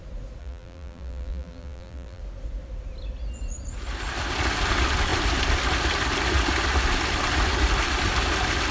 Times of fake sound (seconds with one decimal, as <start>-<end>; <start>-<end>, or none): 0.4-2.2

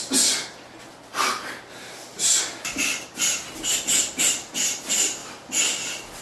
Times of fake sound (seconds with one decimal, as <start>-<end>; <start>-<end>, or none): 5.2-6.2

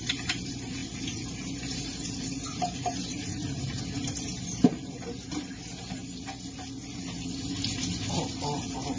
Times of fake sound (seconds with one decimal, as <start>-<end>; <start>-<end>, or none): 0.0-6.0

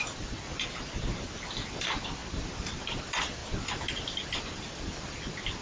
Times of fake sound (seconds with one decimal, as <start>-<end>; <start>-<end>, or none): 0.0-0.5; 1.7-3.4; 3.9-5.6

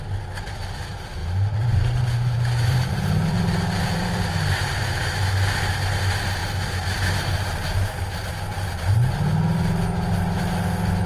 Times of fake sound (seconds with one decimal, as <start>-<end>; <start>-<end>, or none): 1.2-5.2

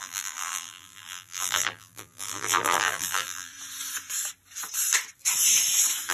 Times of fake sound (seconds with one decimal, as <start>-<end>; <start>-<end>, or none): 0.0-3.5

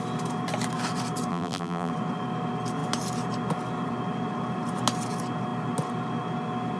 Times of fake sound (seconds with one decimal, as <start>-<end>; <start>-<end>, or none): 1.3-1.9

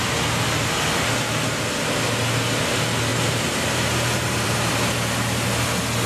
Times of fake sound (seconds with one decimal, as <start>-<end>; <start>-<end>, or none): 3.1-4.7